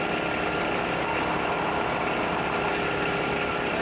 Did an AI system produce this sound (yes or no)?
no